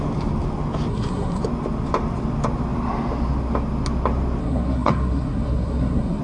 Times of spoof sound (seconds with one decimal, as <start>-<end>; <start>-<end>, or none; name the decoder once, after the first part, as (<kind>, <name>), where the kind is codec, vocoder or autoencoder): 0.9-1.4 (codec, SNAC); 4.4-6.2